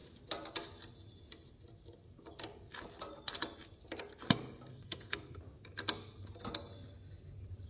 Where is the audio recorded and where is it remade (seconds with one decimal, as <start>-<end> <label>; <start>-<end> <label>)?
0.0-4.7 recorded; 4.7-5.4 remade; 5.4-7.7 recorded